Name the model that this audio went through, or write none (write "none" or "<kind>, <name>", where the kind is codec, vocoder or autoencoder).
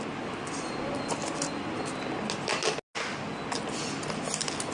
none